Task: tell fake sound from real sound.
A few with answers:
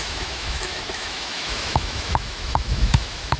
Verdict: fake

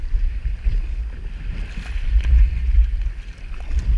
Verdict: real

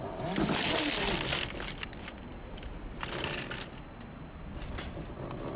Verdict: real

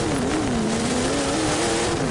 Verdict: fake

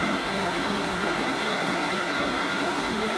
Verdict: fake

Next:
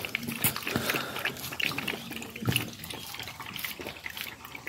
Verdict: real